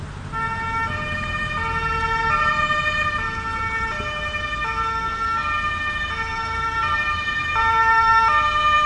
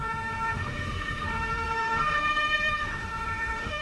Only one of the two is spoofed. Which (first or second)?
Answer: second